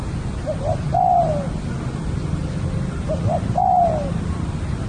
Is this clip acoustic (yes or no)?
yes